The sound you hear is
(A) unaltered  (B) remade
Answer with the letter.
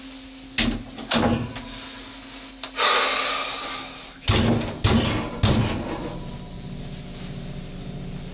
A